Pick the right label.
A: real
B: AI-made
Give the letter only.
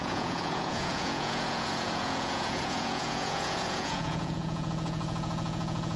B